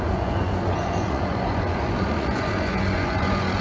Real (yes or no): no